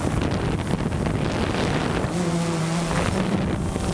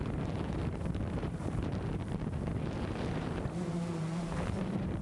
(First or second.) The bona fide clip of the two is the first